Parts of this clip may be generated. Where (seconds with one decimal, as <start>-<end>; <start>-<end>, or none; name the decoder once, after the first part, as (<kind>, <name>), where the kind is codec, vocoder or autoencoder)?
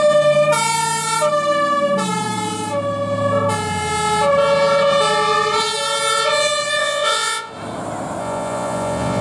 6.8-7.5 (vocoder, Vocos); 8.2-9.2